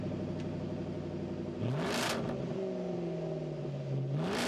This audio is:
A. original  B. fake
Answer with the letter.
A